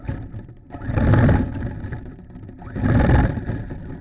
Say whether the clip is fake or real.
real